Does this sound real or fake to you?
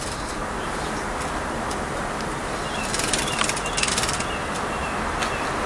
real